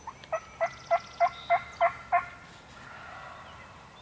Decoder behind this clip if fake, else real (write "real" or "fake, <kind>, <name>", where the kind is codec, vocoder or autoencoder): real